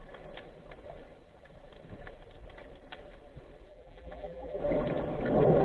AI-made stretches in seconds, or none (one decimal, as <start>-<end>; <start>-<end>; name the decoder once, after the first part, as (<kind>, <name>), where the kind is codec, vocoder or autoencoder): 3.7-4.6 (vocoder, BigVGAN v2)